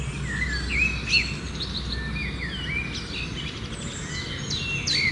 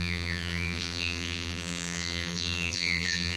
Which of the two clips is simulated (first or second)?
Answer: second